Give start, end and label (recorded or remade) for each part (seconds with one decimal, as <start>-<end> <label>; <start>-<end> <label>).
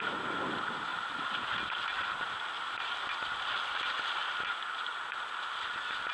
0.0-0.9 recorded; 0.9-4.5 remade; 4.5-4.9 recorded; 4.9-6.1 remade